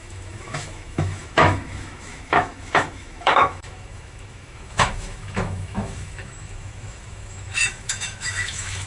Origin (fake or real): fake